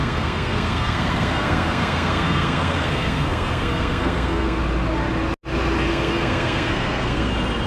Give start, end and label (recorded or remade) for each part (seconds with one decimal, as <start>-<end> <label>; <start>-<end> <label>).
0.0-4.6 remade; 4.6-5.9 recorded; 5.9-7.3 remade; 7.3-7.7 recorded